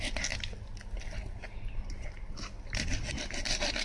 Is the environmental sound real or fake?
real